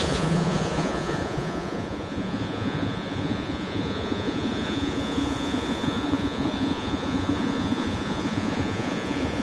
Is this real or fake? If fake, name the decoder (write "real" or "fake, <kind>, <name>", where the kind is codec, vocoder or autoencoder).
fake, vocoder, Vocos